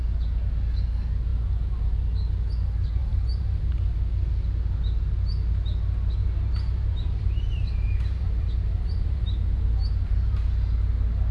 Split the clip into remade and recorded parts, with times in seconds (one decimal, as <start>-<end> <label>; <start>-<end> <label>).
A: 0.0-3.0 recorded; 3.0-3.7 remade; 3.7-6.2 recorded; 6.2-10.5 remade; 10.5-11.3 recorded